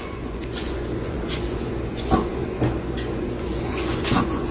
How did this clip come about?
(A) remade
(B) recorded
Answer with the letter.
A